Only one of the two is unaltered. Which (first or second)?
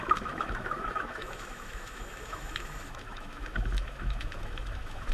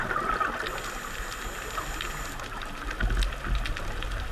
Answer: second